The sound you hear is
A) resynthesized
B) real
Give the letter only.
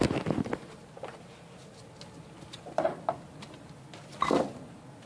B